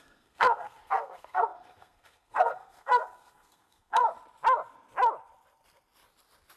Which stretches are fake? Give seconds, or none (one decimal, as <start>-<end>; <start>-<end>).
0.0-4.0